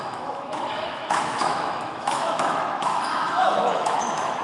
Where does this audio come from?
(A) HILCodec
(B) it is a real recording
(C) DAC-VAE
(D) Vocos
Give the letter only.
C